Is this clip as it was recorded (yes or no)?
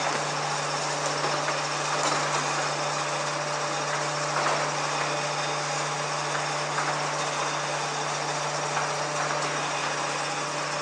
yes